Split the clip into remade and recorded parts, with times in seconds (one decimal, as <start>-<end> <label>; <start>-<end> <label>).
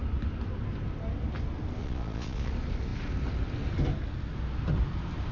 0.0-1.8 recorded; 1.8-2.5 remade; 2.5-5.3 recorded